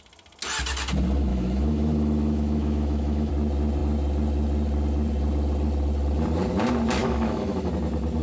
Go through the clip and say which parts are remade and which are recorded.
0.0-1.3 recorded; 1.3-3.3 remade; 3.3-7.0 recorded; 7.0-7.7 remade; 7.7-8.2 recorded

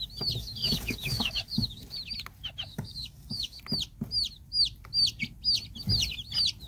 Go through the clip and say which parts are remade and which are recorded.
0.0-0.4 recorded; 0.4-1.8 remade; 1.8-2.7 recorded; 2.7-3.6 remade; 3.6-6.7 recorded

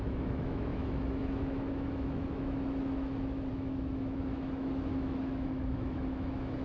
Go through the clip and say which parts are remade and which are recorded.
0.0-6.6 remade

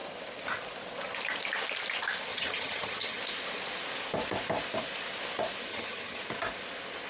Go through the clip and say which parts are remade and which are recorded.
0.0-2.3 recorded; 2.3-3.2 remade; 3.2-5.7 recorded; 5.7-6.2 remade; 6.2-7.1 recorded

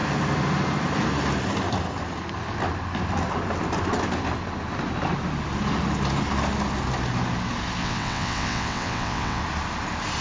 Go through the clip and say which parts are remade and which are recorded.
0.0-7.8 recorded; 7.8-9.4 remade; 9.4-10.2 recorded

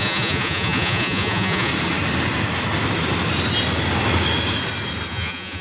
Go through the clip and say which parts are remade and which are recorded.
0.0-1.7 remade; 1.7-5.1 recorded; 5.1-5.6 remade